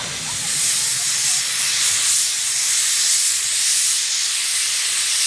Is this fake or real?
real